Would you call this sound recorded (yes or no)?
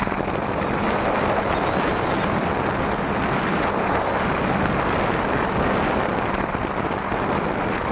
yes